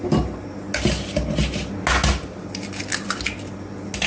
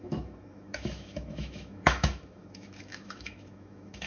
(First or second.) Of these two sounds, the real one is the first